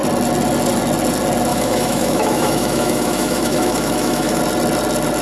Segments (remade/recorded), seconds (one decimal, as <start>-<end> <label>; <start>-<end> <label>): 0.0-1.5 recorded; 1.5-4.4 remade; 4.4-5.2 recorded